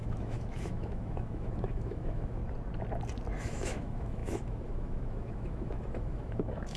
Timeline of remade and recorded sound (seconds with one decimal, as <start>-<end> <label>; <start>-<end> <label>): 0.0-2.4 remade; 2.4-3.4 recorded; 3.4-6.8 remade